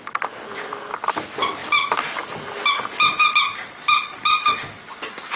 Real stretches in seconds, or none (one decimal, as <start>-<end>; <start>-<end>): 0.0-5.4